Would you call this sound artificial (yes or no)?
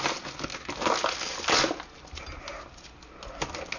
no